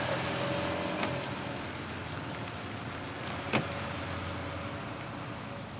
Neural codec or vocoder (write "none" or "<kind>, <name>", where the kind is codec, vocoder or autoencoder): none